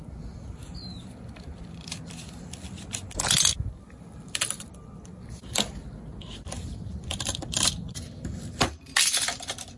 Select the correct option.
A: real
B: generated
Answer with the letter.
B